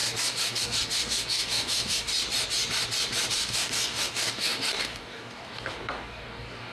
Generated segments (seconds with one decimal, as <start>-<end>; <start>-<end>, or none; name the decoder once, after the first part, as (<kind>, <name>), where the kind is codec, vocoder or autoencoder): 0.0-2.1 (codec, DAC); 3.3-6.7